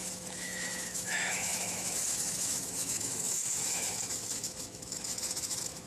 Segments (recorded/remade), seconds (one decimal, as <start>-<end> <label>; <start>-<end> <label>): 0.0-5.9 remade